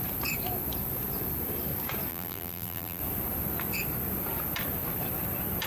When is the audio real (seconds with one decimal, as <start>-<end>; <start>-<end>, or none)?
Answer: 0.0-2.1; 3.0-5.7